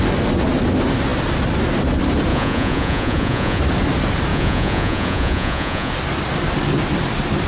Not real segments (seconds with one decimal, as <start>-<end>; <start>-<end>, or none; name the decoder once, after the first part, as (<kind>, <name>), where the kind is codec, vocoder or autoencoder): 2.3-3.6 (vocoder, Vocos); 4.3-5.9